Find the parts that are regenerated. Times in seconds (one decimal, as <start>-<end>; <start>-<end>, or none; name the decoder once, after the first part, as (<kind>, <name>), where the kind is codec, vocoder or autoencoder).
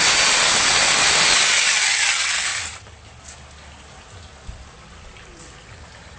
none